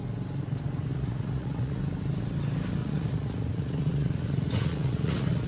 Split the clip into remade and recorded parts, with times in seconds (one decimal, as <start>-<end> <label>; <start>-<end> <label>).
0.0-0.9 recorded; 0.9-1.8 remade; 1.8-2.8 recorded; 2.8-5.5 remade